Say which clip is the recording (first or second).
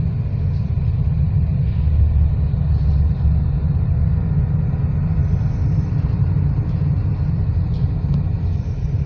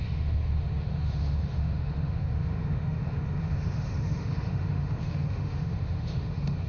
first